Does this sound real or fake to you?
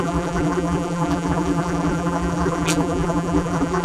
fake